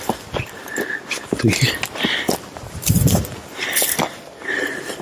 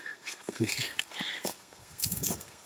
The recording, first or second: first